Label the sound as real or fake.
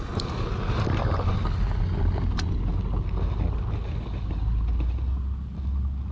real